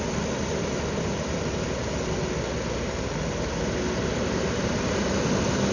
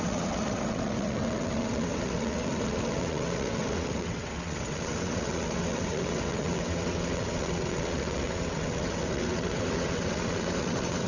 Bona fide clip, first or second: first